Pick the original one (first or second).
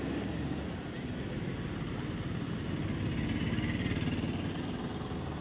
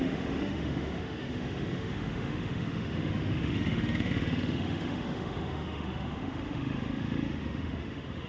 first